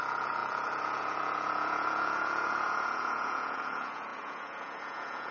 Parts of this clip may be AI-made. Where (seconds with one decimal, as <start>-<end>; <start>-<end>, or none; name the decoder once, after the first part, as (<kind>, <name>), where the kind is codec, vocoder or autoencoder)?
0.0-5.3 (vocoder, Vocos)